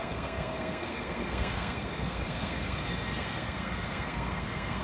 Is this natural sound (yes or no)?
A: no